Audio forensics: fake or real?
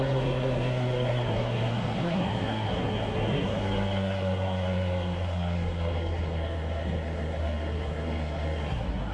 fake